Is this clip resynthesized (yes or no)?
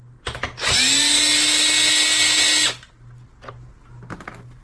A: no